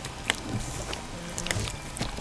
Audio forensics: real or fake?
real